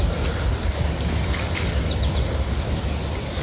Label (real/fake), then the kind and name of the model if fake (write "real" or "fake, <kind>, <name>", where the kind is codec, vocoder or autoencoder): real